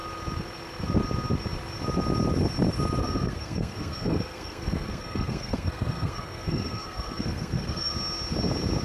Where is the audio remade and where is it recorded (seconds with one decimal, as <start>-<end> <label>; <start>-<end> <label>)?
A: 0.0-3.0 recorded; 3.0-7.9 remade; 7.9-8.8 recorded

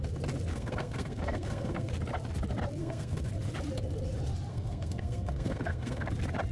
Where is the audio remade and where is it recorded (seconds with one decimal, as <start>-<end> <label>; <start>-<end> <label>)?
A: 0.0-0.5 recorded; 0.5-1.9 remade; 1.9-2.8 recorded; 2.8-3.3 remade; 3.3-4.5 recorded; 4.5-6.1 remade; 6.1-6.5 recorded